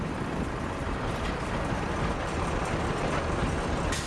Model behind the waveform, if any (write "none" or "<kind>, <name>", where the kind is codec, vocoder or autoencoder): vocoder, BigVGAN v2